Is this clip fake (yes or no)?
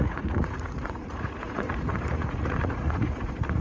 yes